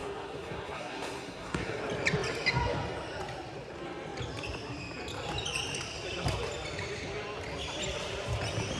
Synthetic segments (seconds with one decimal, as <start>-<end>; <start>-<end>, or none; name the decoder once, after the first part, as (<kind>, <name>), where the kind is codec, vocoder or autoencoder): 0.0-1.8 (codec, SNAC)